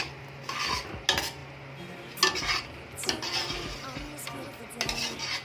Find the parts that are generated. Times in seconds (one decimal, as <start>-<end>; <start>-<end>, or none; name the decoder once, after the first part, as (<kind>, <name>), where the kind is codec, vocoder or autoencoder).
none